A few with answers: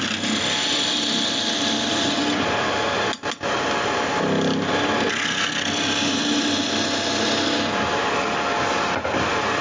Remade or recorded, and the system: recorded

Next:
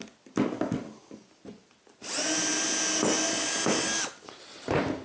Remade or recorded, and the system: recorded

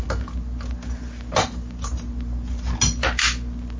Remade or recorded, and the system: recorded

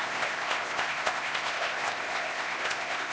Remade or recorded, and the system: remade, codec, ZipCodec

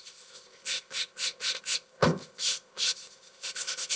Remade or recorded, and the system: remade, codec, ZipCodec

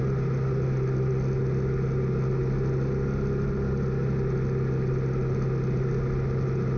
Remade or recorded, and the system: recorded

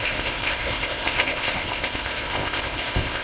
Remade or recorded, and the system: remade, codec, ZipCodec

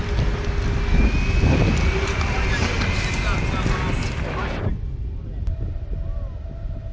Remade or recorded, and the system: recorded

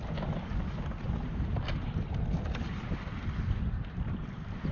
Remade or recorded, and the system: recorded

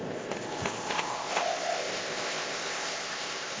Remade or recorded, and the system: remade, codec, ZipCodec